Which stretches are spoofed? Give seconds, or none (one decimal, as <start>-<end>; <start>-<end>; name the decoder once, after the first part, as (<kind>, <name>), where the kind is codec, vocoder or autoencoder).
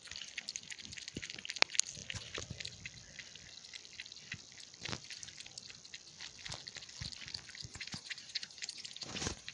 7.7-9.5 (vocoder, Vocos)